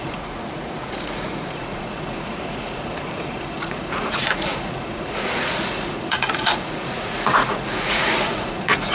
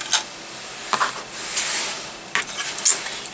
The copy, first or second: first